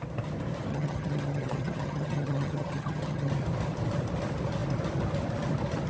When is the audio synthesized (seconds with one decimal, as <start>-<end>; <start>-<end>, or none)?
0.7-3.3